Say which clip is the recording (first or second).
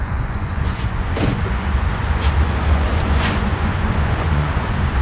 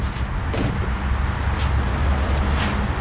second